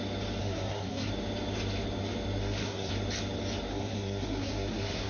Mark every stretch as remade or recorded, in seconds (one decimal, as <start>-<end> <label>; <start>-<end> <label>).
0.0-0.4 recorded; 0.4-1.1 remade; 1.1-2.4 recorded; 2.4-2.9 remade; 2.9-3.7 recorded; 3.7-5.1 remade